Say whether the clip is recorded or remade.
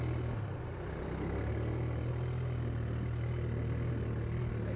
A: recorded